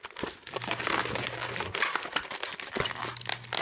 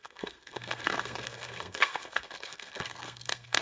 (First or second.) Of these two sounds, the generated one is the second